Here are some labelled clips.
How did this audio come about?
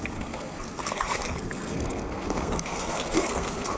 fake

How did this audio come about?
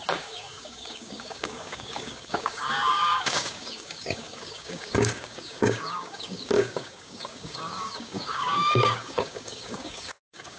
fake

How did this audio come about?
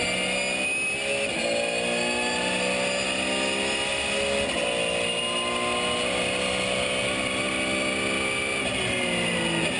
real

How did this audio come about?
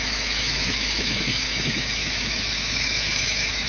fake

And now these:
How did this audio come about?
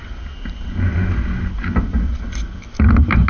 real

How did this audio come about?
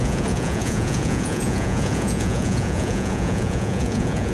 fake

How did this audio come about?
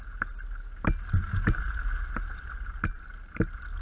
real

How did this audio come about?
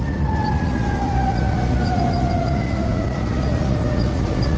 fake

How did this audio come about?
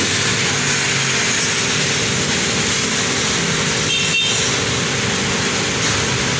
real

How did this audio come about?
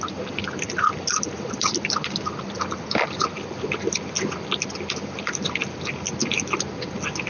real